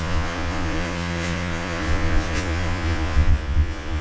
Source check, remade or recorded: remade